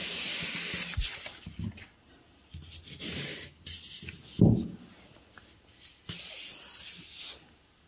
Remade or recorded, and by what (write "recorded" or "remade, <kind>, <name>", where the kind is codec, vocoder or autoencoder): recorded